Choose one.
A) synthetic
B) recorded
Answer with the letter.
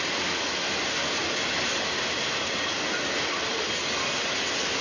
B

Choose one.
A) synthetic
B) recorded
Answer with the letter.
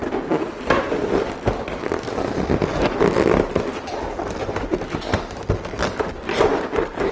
B